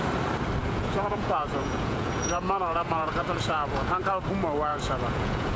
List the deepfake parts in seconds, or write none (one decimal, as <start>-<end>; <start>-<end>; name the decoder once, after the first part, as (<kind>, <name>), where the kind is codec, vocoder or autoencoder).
0.6-4.0 (vocoder, Vocos); 4.7-5.6